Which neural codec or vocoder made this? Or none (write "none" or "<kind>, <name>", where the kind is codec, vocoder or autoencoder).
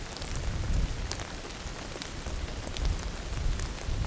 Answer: none